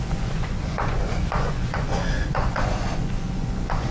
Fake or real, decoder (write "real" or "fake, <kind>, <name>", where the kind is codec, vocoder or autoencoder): fake, vocoder, Vocos